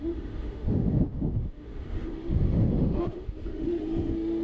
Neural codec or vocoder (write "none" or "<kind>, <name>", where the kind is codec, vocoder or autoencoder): autoencoder, DAC-VAE